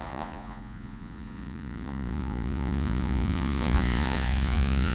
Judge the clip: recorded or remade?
remade